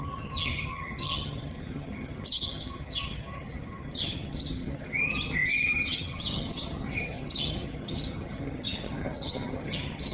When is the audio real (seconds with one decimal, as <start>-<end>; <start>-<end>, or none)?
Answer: none